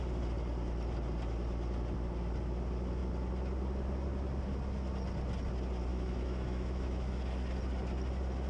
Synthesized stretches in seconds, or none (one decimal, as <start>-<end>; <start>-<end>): 5.9-7.1

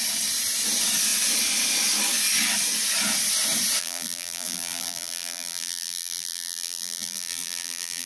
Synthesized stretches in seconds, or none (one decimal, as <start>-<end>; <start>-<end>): 3.8-8.1

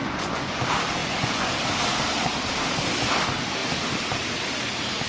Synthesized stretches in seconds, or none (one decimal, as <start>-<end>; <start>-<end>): 0.0-0.6; 1.0-1.5

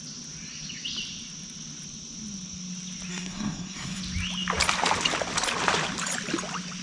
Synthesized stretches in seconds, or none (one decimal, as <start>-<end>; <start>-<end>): 3.1-4.0

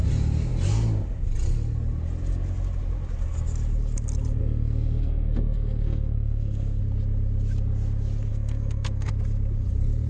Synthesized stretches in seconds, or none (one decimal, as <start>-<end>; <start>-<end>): 4.4-6.8; 8.3-9.1

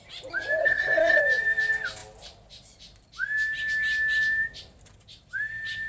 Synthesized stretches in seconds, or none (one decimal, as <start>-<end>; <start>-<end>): 0.6-1.2